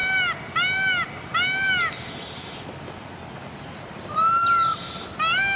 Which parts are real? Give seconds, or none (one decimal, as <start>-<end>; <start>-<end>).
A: 0.0-5.6